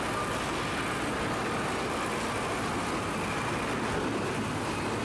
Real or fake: real